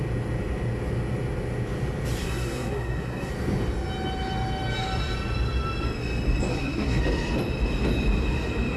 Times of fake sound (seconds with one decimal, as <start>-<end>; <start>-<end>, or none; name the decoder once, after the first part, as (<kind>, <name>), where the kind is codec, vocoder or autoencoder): 2.2-3.3 (codec, SNAC); 6.5-7.0